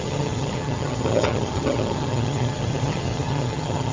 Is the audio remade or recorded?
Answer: remade